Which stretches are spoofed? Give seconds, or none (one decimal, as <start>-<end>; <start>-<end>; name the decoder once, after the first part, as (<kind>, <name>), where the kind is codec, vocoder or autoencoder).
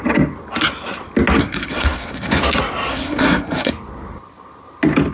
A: 1.4-2.4 (codec, SNAC); 2.9-3.7